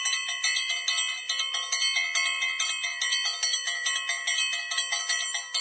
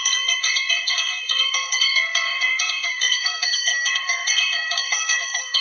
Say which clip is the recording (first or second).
first